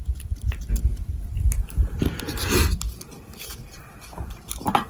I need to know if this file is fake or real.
real